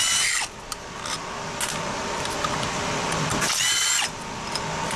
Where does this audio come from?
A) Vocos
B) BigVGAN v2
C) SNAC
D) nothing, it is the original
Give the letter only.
B